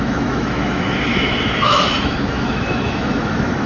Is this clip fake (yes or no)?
yes